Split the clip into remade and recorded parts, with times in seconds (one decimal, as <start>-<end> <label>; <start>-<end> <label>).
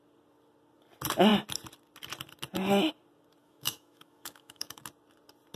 0.0-3.4 recorded; 3.4-4.8 remade; 4.8-5.6 recorded